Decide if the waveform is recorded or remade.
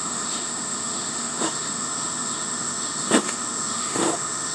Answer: remade